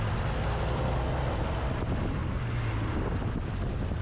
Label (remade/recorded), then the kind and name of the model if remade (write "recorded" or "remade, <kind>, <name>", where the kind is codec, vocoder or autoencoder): recorded